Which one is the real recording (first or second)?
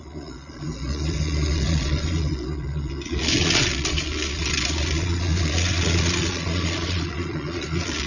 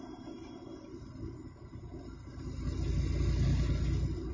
second